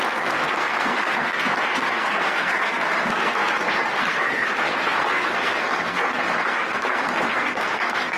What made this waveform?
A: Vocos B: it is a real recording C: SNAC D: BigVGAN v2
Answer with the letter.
C